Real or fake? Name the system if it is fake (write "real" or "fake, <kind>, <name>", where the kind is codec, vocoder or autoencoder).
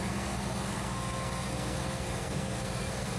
fake, codec, SNAC